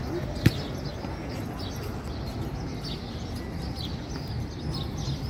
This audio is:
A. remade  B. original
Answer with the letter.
B